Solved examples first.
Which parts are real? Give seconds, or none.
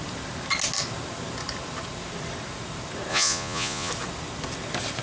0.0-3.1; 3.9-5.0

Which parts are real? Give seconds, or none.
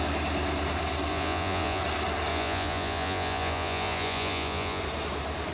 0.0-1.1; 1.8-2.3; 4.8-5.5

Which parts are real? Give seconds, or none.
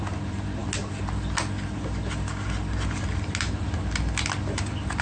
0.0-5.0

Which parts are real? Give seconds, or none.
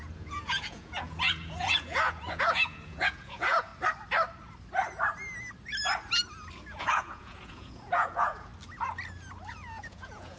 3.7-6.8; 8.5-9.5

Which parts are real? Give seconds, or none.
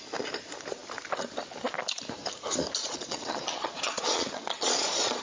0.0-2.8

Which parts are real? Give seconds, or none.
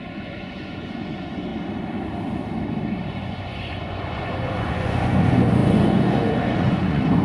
1.5-3.0